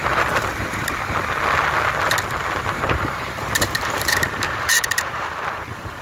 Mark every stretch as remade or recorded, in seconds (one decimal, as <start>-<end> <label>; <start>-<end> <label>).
0.0-2.7 recorded; 2.7-6.0 remade